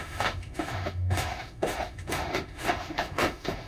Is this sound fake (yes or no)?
yes